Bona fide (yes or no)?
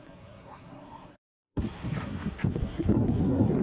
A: no